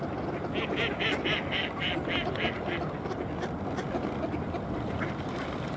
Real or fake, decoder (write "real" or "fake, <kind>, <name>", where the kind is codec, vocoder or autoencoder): real